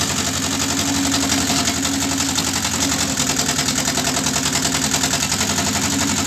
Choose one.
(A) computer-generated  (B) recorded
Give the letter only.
B